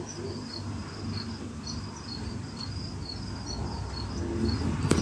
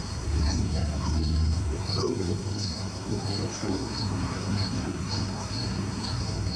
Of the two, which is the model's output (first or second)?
second